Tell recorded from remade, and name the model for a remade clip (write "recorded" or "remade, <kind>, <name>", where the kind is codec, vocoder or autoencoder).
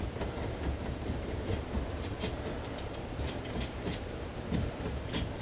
remade, vocoder, BigVGAN v2